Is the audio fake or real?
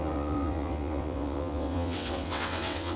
fake